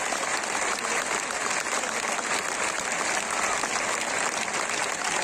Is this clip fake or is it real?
real